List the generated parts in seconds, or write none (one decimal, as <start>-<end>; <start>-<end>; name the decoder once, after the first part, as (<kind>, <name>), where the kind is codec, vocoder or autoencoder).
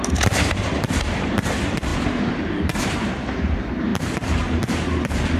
0.0-5.4 (vocoder, BigVGAN v2)